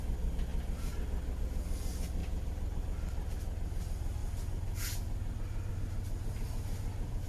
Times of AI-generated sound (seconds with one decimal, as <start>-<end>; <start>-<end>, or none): 2.2-2.8